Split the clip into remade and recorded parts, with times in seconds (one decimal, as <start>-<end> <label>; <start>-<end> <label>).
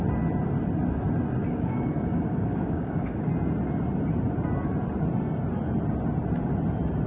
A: 0.0-1.4 recorded; 1.4-3.3 remade; 3.3-7.1 recorded